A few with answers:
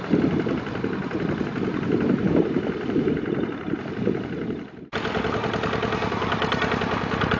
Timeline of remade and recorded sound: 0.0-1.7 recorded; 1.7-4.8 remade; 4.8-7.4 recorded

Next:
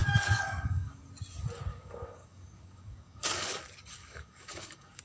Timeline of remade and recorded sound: 0.0-1.0 remade; 1.0-1.7 recorded; 1.7-3.6 remade; 3.6-4.0 recorded; 4.0-5.0 remade

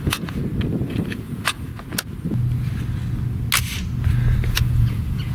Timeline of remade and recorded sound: 0.0-0.4 remade; 0.4-0.9 recorded; 0.9-1.7 remade; 1.7-4.5 recorded; 4.5-5.3 remade